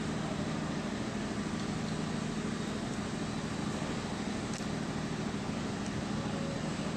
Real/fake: real